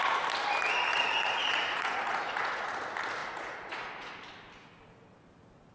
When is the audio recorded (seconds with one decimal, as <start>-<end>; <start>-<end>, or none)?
0.0-0.9; 2.7-3.2; 4.1-5.7